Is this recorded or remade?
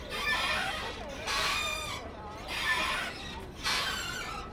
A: remade